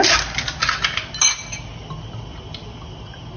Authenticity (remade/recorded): recorded